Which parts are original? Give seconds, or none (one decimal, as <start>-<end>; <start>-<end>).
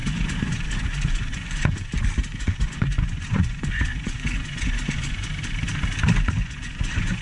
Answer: 1.9-2.3; 5.3-6.4